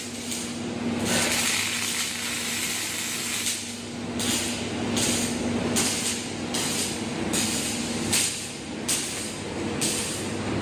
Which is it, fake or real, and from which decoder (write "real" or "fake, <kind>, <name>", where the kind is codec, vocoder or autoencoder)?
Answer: real